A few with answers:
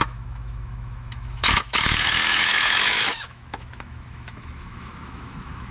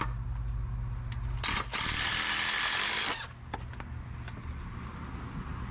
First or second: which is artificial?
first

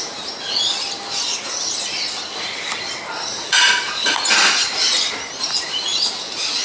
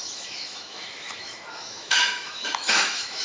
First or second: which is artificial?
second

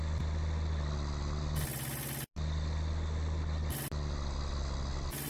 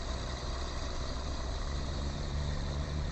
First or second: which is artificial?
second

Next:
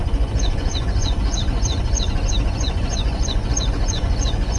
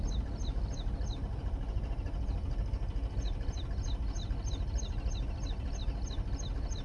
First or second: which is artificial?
first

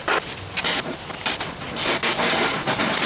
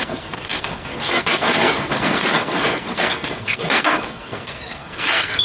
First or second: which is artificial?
second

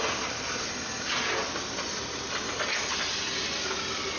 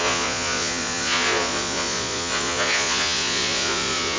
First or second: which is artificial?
second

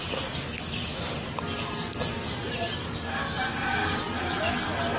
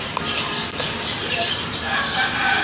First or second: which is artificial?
second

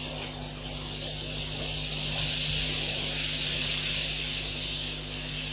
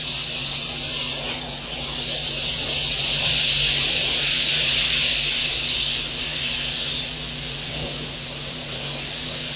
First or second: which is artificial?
second